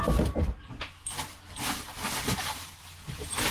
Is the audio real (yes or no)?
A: yes